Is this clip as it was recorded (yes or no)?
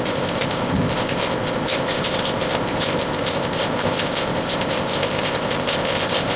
no